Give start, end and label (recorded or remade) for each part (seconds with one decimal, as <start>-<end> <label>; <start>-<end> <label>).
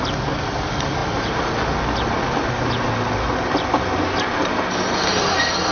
0.0-5.7 recorded